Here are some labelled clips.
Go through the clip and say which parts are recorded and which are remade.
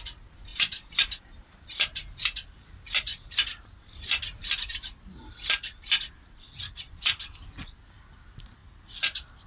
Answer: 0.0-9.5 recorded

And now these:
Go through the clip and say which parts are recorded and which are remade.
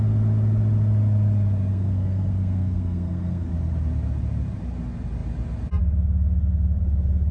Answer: 0.0-1.7 recorded; 1.7-3.5 remade; 3.5-7.3 recorded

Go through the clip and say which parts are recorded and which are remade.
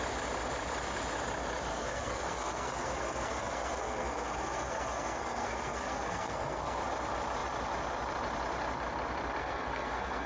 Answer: 0.0-1.7 recorded; 1.7-6.8 remade; 6.8-9.4 recorded; 9.4-10.3 remade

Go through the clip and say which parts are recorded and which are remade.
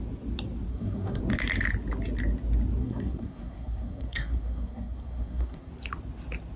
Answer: 0.0-0.7 recorded; 0.7-1.2 remade; 1.2-2.8 recorded; 2.8-5.7 remade; 5.7-6.6 recorded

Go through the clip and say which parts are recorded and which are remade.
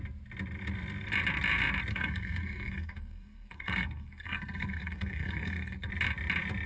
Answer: 0.0-1.9 recorded; 1.9-5.9 remade; 5.9-6.7 recorded